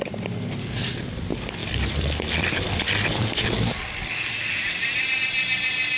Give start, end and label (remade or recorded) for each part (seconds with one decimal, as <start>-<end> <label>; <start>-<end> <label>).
0.0-1.6 recorded; 1.6-5.2 remade; 5.2-6.0 recorded